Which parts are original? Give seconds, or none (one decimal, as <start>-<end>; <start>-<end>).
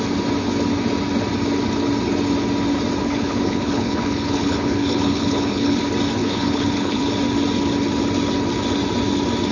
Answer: 0.0-3.0; 5.8-6.2; 7.0-9.5